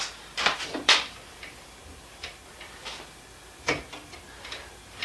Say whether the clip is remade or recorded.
remade